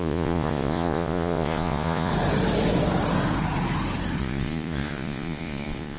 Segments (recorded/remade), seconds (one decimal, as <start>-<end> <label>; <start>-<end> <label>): 0.0-2.1 remade; 2.1-4.2 recorded; 4.2-6.0 remade